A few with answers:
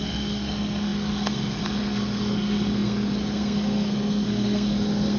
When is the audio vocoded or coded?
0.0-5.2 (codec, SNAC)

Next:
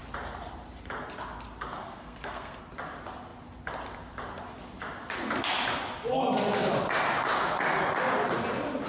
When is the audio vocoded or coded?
1.8-2.6 (codec, SNAC)

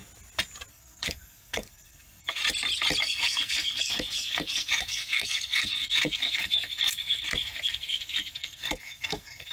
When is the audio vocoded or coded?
0.7-2.4 (codec, SNAC); 3.0-9.5

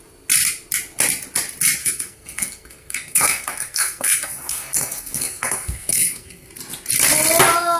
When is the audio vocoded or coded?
1.8-6.5 (codec, SNAC)